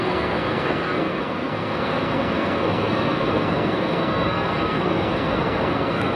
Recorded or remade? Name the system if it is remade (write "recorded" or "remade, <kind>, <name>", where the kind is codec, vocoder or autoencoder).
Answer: remade, codec, SNAC